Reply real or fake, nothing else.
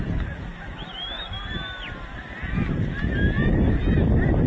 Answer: real